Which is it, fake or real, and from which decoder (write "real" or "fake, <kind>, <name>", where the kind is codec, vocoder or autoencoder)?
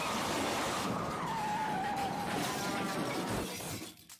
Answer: fake, vocoder, BigVGAN v2